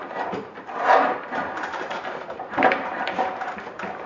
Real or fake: fake